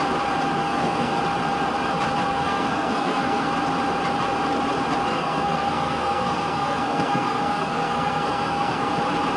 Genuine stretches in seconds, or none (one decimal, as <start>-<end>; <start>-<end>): 0.0-0.6; 1.2-2.3; 3.5-5.1; 8.9-9.4